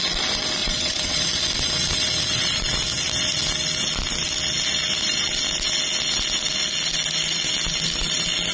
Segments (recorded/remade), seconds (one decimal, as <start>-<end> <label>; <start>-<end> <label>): 0.0-0.6 recorded; 0.6-1.2 remade; 1.2-8.5 recorded